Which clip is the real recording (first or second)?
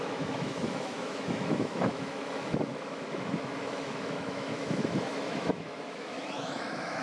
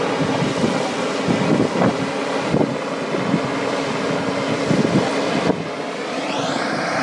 second